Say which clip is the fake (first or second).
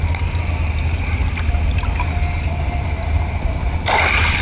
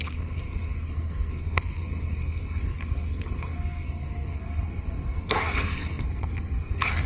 second